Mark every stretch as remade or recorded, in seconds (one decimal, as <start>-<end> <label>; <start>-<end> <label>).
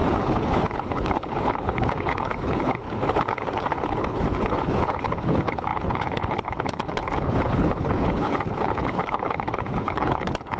0.0-10.6 remade